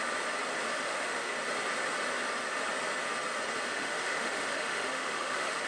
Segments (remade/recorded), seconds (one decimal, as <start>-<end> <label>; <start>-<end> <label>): 0.0-0.7 recorded; 0.7-1.3 remade; 1.3-3.7 recorded; 3.7-5.7 remade